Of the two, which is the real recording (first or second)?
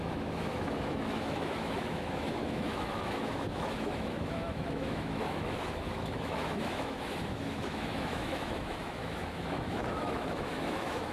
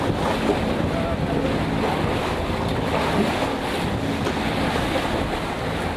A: second